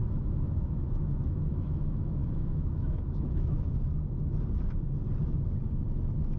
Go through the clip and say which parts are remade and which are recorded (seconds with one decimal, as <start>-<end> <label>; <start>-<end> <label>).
0.0-3.8 remade; 3.8-6.4 recorded